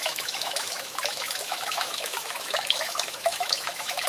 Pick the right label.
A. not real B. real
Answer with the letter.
A